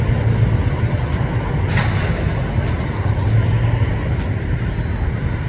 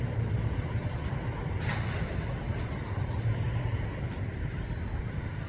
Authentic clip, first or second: first